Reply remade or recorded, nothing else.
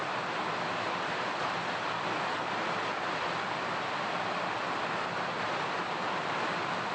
recorded